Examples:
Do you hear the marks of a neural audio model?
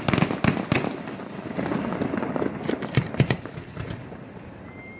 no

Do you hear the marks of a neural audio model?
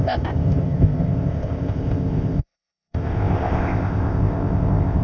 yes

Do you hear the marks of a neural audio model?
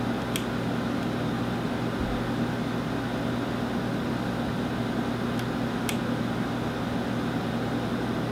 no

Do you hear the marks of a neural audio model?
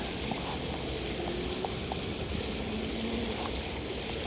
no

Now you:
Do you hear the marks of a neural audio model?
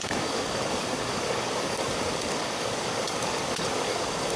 yes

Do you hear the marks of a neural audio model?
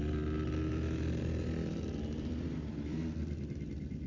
yes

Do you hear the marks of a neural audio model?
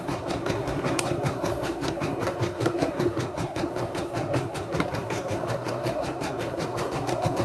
yes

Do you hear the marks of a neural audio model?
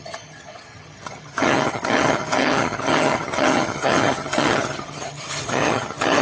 yes